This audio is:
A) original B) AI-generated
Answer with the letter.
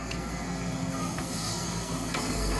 B